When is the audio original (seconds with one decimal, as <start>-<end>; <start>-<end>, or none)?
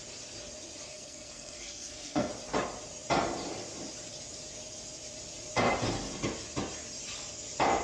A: 0.0-0.9; 2.3-7.8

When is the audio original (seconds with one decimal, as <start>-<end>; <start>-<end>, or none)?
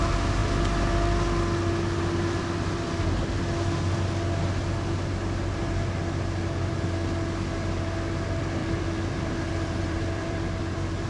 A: 0.0-8.6; 10.6-11.1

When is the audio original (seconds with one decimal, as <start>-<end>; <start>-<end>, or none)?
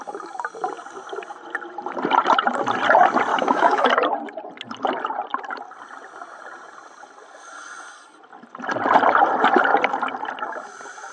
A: 0.0-3.3; 3.9-11.1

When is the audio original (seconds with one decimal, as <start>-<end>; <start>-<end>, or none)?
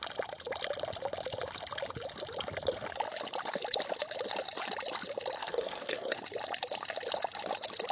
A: 0.0-5.4; 6.2-7.9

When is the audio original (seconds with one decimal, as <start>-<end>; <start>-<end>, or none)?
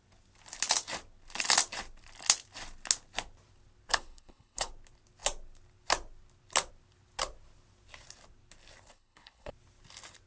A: 0.0-3.9; 4.7-8.9; 9.5-10.3